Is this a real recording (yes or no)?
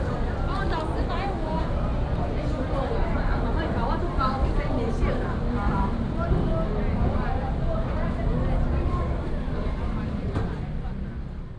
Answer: yes